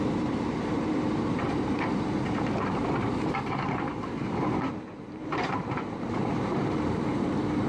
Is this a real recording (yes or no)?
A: no